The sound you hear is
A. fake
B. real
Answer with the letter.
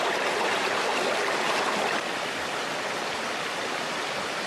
B